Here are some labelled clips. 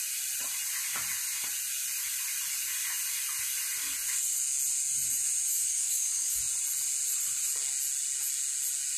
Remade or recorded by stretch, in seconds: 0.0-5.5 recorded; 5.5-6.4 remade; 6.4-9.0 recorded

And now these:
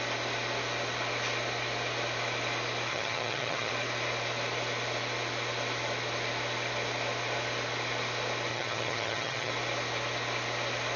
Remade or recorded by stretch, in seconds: 0.0-2.9 recorded; 2.9-3.7 remade; 3.7-8.5 recorded; 8.5-9.5 remade; 9.5-11.0 recorded

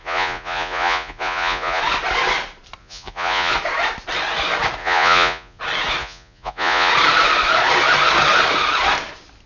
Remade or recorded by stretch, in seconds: 0.0-1.8 remade; 1.8-2.8 recorded; 2.8-3.5 remade; 3.5-4.8 recorded; 4.8-5.6 remade; 5.6-6.0 recorded; 6.0-6.9 remade; 6.9-9.5 recorded

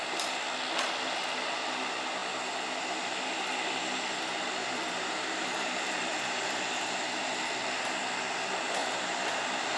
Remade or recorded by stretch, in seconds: 0.0-4.6 recorded; 4.6-7.4 remade; 7.4-8.8 recorded; 8.8-9.4 remade; 9.4-9.8 recorded

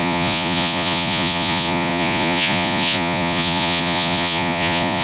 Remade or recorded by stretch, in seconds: 0.0-5.0 remade

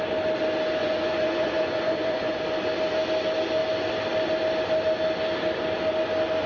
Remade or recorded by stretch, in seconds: 0.0-0.8 recorded; 0.8-2.4 remade; 2.4-6.5 recorded

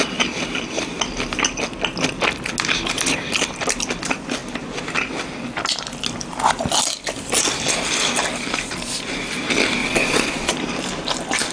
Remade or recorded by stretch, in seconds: 0.0-9.8 recorded; 9.8-10.5 remade; 10.5-11.5 recorded

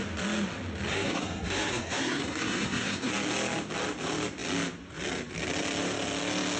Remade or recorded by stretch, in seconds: 0.0-0.9 recorded; 0.9-3.1 remade; 3.1-6.6 recorded